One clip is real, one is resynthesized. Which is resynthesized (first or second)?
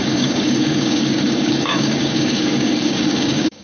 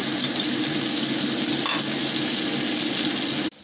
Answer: first